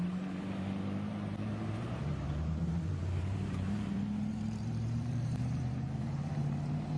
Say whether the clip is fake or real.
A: fake